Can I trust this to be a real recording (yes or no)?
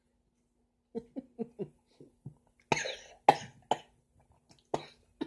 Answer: yes